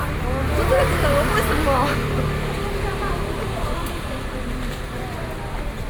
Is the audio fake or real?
real